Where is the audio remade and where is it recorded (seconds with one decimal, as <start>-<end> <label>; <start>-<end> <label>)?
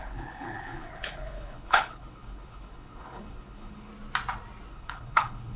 0.0-3.9 remade; 3.9-4.7 recorded; 4.7-5.6 remade